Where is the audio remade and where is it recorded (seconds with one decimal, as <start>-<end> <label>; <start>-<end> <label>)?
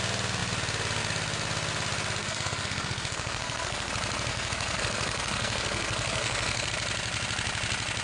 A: 0.0-2.2 recorded; 2.2-3.9 remade; 3.9-4.3 recorded; 4.3-6.7 remade; 6.7-8.0 recorded